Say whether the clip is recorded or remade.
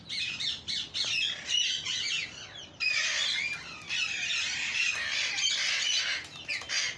recorded